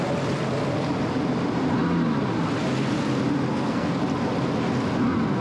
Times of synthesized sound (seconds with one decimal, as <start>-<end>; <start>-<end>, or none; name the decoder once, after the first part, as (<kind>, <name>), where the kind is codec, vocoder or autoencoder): 3.5-4.0 (codec, SNAC)